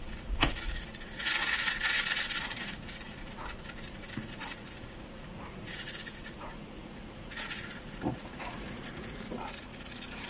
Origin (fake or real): fake